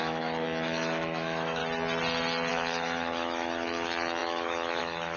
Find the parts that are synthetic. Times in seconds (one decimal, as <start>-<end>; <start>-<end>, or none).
0.0-1.6; 2.5-5.2